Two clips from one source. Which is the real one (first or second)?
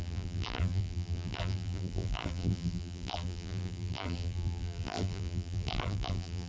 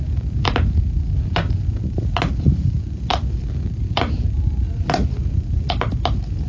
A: second